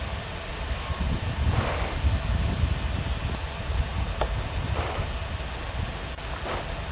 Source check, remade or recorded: recorded